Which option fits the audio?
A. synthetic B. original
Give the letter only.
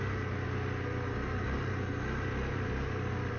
B